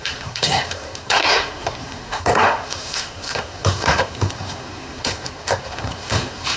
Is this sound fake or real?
fake